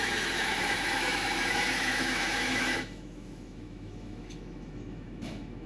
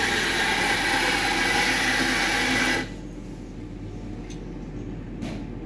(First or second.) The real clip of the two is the second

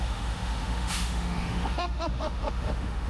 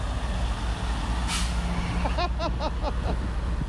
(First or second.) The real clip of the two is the second